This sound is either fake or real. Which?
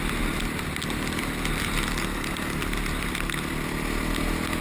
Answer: real